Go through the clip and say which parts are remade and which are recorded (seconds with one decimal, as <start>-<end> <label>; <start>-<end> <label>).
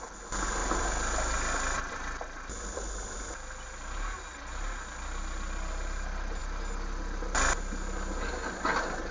0.0-0.6 recorded; 0.6-3.3 remade; 3.3-9.1 recorded